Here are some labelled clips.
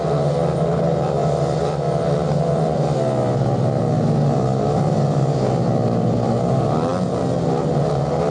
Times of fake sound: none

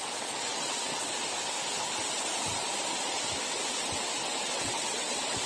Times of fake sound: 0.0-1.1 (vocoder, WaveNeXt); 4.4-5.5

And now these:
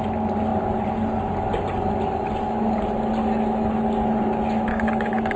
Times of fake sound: 4.7-5.4 (codec, DAC)

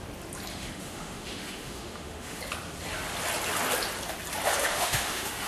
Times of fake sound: 0.5-2.4 (autoencoder, DAC-VAE); 4.6-5.5